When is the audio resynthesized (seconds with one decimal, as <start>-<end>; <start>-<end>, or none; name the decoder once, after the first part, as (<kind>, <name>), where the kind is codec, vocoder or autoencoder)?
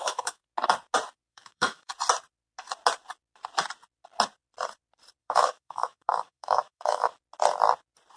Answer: 0.0-0.4 (autoencoder, DAC-VAE); 1.3-1.9; 5.2-7.1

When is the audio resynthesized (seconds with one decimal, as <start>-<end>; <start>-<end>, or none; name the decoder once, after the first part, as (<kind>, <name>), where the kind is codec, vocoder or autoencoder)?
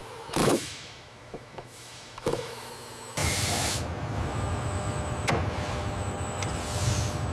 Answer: 0.4-2.7 (autoencoder, DAC-VAE)